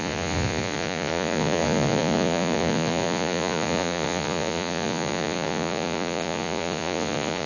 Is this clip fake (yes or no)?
yes